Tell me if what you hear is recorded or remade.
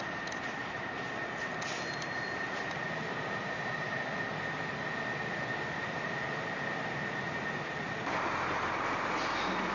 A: recorded